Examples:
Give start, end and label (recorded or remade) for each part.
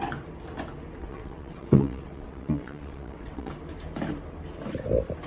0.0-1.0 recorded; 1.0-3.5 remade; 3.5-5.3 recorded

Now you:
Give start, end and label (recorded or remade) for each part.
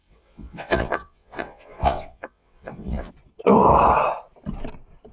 0.0-3.1 remade; 3.1-5.1 recorded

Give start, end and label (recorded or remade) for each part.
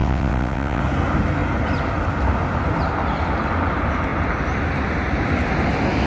0.0-0.8 remade; 0.8-6.1 recorded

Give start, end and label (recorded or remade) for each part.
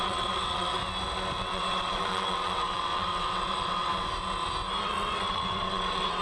0.0-0.8 remade; 0.8-1.4 recorded; 1.4-3.9 remade; 3.9-4.8 recorded; 4.8-6.2 remade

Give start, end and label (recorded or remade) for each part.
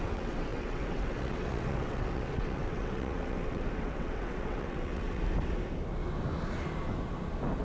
0.0-5.2 remade; 5.2-7.6 recorded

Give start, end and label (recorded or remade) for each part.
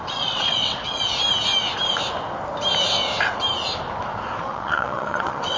0.0-1.0 remade; 1.0-4.4 recorded; 4.4-5.6 remade